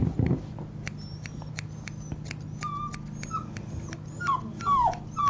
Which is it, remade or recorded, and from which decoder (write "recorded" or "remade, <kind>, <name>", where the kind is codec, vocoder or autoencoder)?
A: recorded